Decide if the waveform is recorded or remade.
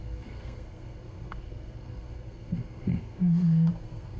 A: remade